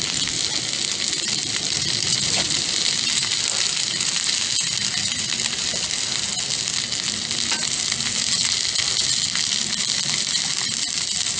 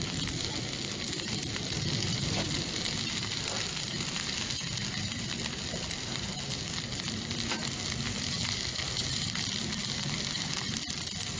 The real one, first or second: first